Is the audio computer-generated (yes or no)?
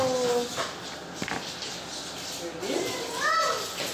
no